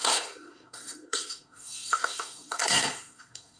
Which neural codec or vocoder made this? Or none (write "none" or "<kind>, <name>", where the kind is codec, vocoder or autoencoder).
codec, SNAC